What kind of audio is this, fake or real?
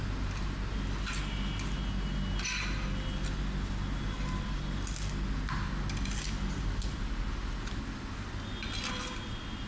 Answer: real